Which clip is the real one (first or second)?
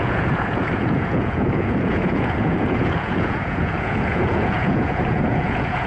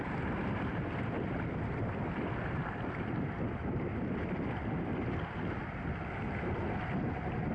second